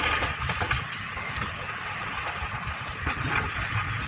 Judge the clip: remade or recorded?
recorded